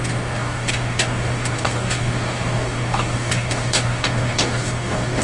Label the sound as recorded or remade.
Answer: remade